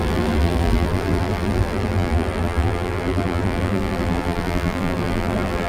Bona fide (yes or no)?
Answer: no